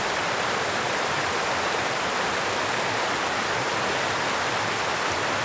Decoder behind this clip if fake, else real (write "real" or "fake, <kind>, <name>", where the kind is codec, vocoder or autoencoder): real